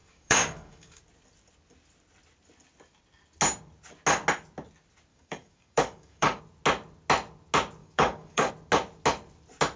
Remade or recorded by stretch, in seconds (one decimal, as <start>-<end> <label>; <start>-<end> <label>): 0.0-1.0 remade; 1.0-5.1 recorded; 5.1-6.4 remade; 6.4-7.8 recorded; 7.8-8.5 remade; 8.5-9.8 recorded